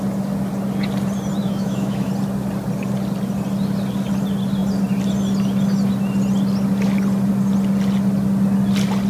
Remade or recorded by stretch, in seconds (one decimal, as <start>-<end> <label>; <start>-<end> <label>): 0.0-1.4 recorded; 1.4-2.1 remade; 2.1-9.1 recorded